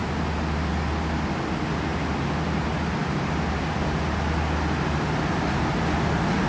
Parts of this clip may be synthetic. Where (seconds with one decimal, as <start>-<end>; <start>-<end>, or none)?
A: none